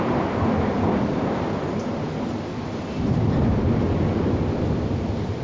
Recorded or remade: remade